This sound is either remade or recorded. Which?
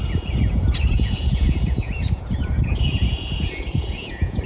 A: remade